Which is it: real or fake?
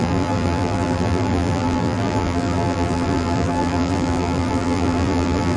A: fake